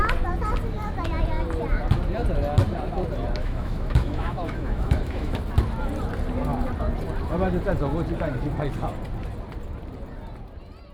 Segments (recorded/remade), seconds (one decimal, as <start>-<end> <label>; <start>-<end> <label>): 0.0-3.4 recorded; 3.4-5.4 remade; 5.4-10.9 recorded